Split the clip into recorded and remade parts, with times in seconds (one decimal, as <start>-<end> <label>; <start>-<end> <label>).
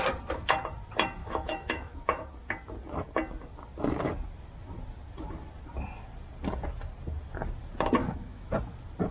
0.0-1.2 recorded; 1.2-2.2 remade; 2.2-8.0 recorded; 8.0-8.5 remade; 8.5-9.1 recorded